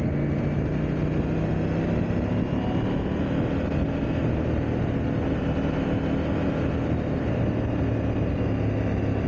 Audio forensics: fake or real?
real